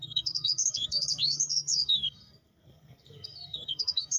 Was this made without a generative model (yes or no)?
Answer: no